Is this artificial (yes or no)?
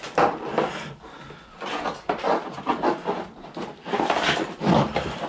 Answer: no